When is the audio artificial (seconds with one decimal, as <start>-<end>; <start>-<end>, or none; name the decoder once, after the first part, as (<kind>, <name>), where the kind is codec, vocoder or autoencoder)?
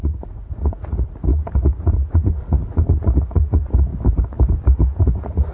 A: 0.0-3.9 (vocoder, Vocos); 5.0-5.5